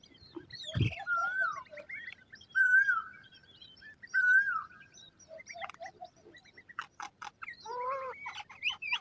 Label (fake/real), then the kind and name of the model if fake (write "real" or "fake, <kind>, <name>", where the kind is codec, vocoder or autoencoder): fake, vocoder, BigVGAN v2